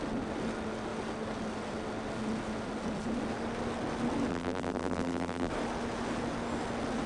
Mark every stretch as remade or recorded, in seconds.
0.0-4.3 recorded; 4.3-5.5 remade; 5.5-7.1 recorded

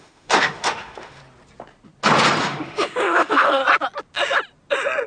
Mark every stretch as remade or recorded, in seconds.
0.0-1.2 remade; 1.2-2.4 recorded; 2.4-3.6 remade; 3.6-5.1 recorded